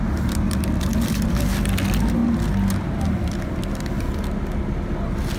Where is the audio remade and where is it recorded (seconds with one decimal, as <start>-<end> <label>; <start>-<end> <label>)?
0.0-0.9 recorded; 0.9-1.5 remade; 1.5-5.4 recorded